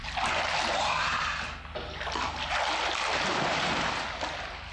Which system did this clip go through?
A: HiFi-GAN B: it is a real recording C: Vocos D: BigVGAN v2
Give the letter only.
B